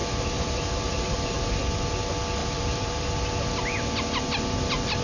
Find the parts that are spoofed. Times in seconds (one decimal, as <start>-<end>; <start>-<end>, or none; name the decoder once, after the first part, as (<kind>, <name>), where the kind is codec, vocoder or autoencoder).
0.0-1.6 (vocoder, BigVGAN v2); 2.4-3.1